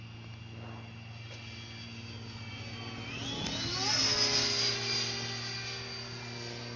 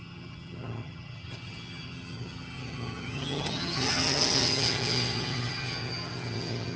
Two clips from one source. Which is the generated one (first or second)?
second